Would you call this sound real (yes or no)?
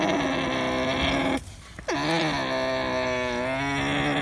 yes